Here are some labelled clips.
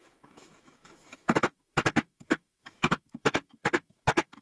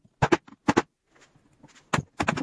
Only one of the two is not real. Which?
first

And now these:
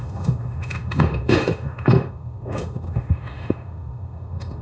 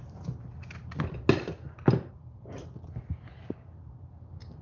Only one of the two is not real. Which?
first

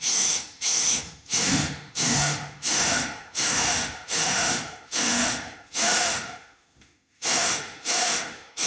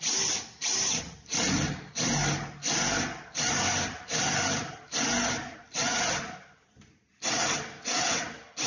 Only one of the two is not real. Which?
first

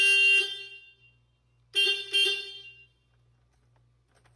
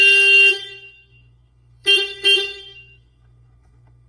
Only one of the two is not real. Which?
second